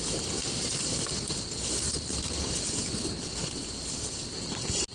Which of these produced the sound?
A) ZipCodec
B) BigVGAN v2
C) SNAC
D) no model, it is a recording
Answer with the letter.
D